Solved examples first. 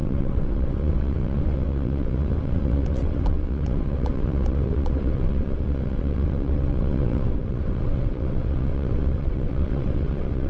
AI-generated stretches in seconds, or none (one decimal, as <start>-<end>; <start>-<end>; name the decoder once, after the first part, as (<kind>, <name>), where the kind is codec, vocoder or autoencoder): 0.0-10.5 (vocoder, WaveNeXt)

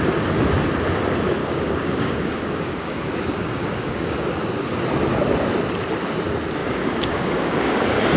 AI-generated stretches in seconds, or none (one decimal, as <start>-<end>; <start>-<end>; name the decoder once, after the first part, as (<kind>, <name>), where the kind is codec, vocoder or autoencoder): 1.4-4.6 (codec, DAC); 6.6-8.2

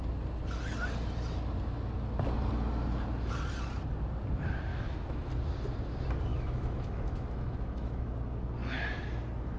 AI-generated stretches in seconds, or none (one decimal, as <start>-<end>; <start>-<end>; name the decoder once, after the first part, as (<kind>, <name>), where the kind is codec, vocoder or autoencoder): 4.7-5.3 (autoencoder, DAC-VAE); 6.3-8.1